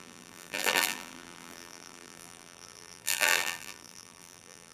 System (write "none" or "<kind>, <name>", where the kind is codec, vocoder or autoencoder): vocoder, BigVGAN v2